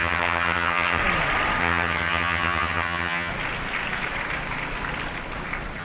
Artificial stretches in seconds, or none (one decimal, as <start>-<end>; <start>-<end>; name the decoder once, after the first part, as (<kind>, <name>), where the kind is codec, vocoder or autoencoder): 0.0-1.0 (vocoder, HiFi-GAN); 1.6-3.3